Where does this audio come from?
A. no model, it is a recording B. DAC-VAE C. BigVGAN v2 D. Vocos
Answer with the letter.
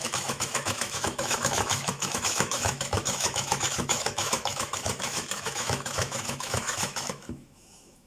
B